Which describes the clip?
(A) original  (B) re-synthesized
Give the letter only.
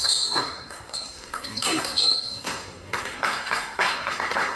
B